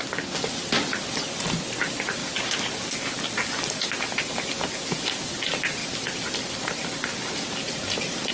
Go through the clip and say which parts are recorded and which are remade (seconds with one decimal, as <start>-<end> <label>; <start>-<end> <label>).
0.0-8.3 recorded